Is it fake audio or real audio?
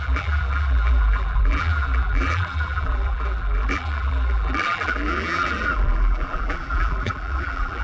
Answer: fake